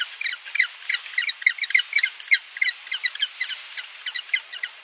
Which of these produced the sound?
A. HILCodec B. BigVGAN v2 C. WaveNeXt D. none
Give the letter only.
D